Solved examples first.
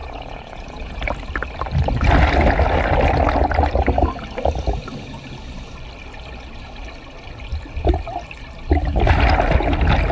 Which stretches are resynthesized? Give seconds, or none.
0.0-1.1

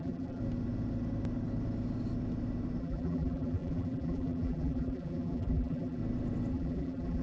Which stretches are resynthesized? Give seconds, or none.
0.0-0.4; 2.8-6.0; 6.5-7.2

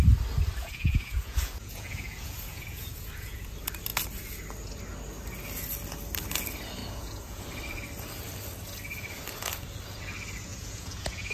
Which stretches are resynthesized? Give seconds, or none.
0.6-3.5; 6.8-7.4; 10.5-11.3

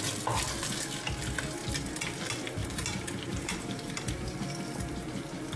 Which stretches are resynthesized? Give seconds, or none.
2.6-4.2

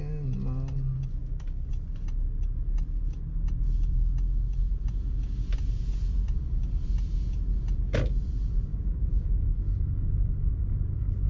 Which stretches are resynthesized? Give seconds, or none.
1.2-1.7; 8.7-9.5